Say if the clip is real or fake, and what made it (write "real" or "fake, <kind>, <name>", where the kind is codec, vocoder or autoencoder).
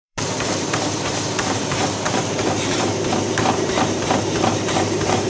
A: fake, vocoder, BigVGAN v2